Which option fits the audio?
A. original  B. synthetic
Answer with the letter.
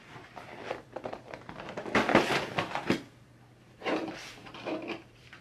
B